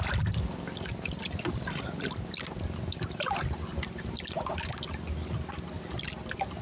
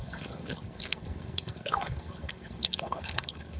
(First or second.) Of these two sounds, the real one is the first